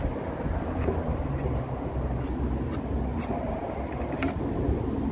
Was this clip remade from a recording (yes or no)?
no